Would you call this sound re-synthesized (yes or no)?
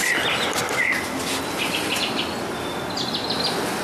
no